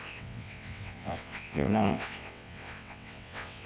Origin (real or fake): fake